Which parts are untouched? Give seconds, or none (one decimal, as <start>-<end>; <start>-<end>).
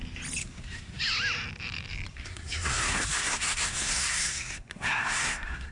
0.0-0.4; 1.0-2.1